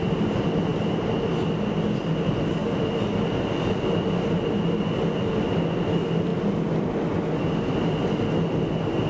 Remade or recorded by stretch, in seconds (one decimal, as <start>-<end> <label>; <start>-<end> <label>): 0.0-9.1 recorded